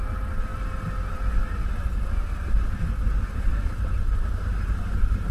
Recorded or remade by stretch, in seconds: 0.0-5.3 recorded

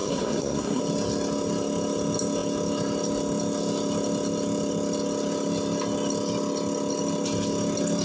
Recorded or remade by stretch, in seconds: 0.0-0.8 remade; 0.8-8.0 recorded

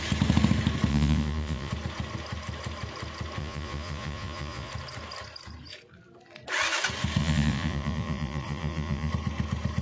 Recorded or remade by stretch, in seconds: 0.0-0.9 recorded; 0.9-1.7 remade; 1.7-3.4 recorded; 3.4-4.7 remade; 4.7-7.2 recorded; 7.2-9.1 remade; 9.1-9.8 recorded

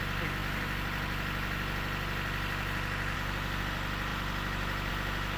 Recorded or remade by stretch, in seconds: 0.0-5.4 recorded

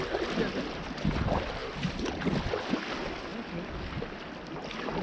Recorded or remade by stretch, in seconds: 0.0-5.0 recorded

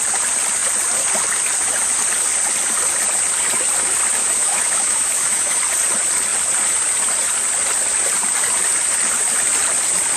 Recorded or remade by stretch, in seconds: 0.0-4.2 recorded; 4.2-5.6 remade; 5.6-10.2 recorded